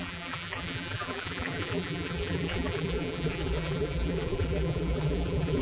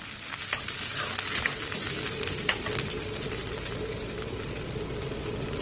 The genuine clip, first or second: second